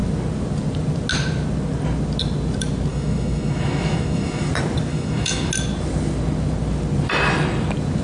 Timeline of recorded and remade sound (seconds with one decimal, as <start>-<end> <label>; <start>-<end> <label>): 0.0-2.9 recorded; 2.9-4.5 remade; 4.5-4.9 recorded; 4.9-5.5 remade; 5.5-8.0 recorded